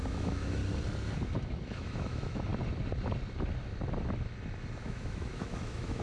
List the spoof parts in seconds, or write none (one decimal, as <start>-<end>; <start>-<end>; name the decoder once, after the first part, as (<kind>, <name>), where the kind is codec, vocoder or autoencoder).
0.0-0.6 (autoencoder, DAC-VAE); 1.5-2.5; 4.8-6.0